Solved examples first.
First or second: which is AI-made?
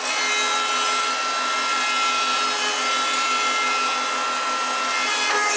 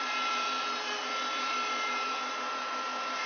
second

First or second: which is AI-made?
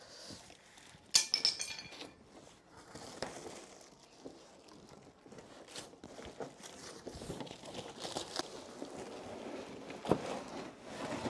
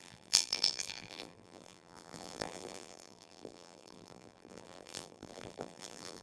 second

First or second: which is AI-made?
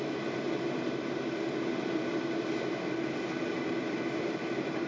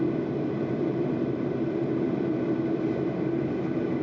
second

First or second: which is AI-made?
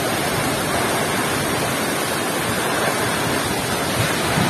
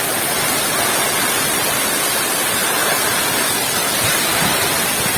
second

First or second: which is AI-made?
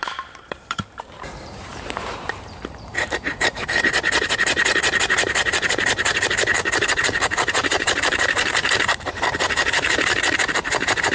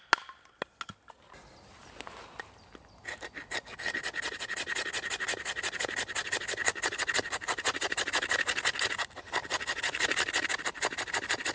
first